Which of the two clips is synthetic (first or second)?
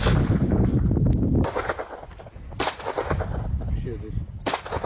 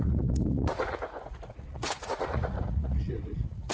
second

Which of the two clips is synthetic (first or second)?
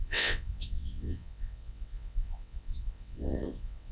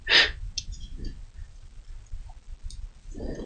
first